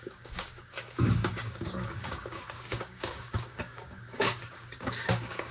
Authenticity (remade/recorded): remade